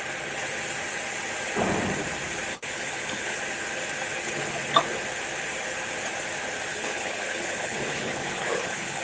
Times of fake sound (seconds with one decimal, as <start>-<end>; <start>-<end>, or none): 2.5-3.4; 6.7-9.0